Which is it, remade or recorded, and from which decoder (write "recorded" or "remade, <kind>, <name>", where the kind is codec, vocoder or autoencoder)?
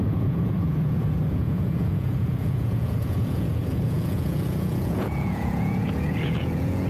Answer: remade, vocoder, Vocos